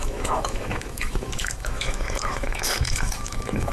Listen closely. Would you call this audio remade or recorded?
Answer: remade